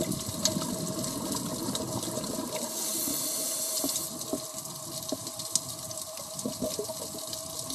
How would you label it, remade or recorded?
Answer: recorded